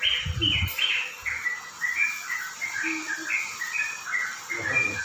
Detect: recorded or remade recorded